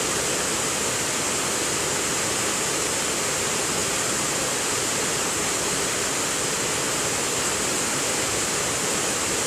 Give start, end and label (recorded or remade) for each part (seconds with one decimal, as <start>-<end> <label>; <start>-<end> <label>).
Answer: 0.0-9.5 recorded